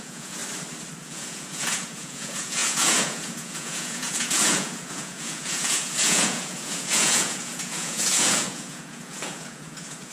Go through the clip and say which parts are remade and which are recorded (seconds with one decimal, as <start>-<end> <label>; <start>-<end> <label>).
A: 0.0-0.4 remade; 0.4-1.0 recorded; 1.0-10.1 remade